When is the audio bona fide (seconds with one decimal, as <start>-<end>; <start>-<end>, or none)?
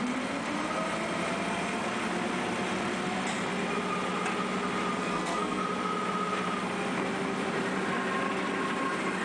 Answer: 0.0-5.0; 5.6-9.2